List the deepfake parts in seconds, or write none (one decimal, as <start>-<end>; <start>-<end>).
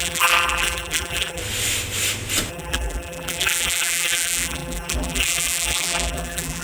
0.0-1.4; 2.5-6.6